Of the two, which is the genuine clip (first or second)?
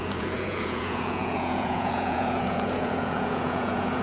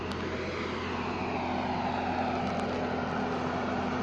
second